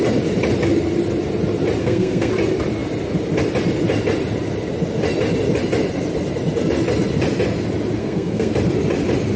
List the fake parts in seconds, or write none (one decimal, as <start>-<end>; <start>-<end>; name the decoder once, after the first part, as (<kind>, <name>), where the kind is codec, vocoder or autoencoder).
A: 1.8-2.3 (codec, SNAC); 8.0-8.5